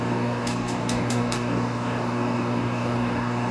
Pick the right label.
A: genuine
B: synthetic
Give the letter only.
B